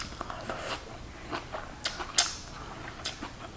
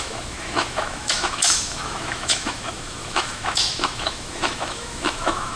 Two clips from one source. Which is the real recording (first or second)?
first